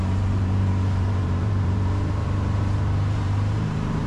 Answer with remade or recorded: remade